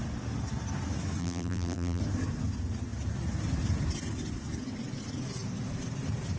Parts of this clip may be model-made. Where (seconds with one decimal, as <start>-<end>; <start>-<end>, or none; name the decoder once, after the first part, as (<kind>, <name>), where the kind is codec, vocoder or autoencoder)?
1.2-2.0 (vocoder, BigVGAN v2)